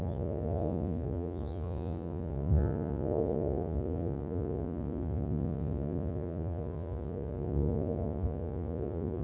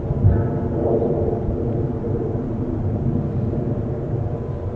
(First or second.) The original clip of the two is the second